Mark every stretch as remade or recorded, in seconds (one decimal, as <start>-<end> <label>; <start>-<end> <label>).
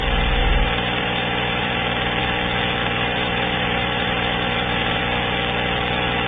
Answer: 0.0-0.4 recorded; 0.4-2.2 remade; 2.2-2.8 recorded; 2.8-5.0 remade; 5.0-6.3 recorded